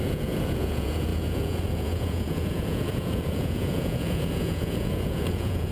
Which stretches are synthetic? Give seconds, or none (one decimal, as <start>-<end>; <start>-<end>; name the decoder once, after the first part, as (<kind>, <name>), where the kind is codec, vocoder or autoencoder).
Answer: 0.0-5.7 (vocoder, Vocos)